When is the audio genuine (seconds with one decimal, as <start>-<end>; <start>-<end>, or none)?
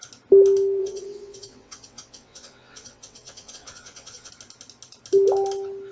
0.0-0.8; 4.3-5.9